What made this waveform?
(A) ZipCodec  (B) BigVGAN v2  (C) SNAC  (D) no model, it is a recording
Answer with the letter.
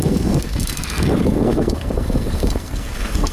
C